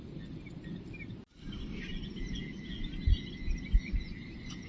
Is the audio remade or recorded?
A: recorded